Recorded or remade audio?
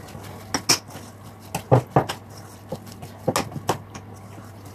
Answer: recorded